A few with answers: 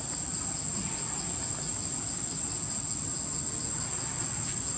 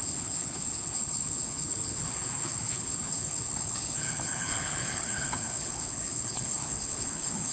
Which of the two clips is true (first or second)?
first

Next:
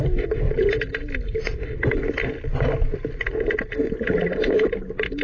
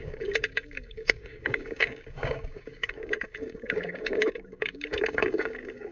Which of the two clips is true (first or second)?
first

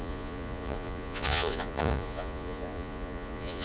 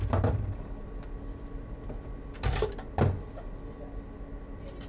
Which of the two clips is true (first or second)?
second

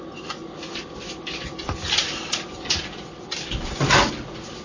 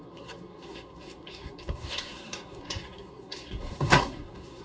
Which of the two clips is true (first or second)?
first